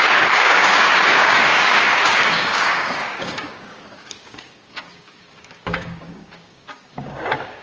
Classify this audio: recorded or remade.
remade